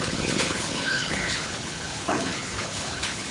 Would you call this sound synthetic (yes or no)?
yes